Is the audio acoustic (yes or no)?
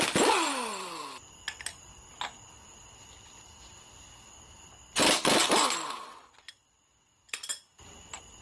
no